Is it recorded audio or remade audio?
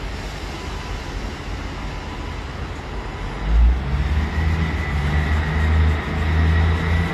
recorded